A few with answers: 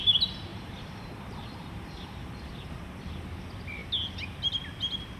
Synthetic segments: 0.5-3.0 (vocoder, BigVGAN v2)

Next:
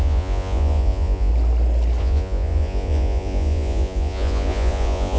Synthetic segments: 0.0-1.3 (vocoder, Vocos); 2.0-5.2